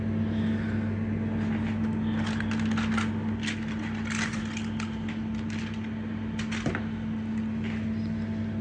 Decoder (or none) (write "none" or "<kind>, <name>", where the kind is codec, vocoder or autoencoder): none